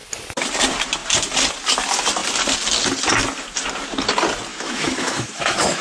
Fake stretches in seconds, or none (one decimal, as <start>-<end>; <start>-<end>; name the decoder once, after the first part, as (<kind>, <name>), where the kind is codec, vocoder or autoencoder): 4.5-5.8 (autoencoder, DAC-VAE)